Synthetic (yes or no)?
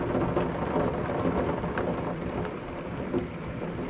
no